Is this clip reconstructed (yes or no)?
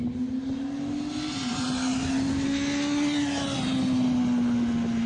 no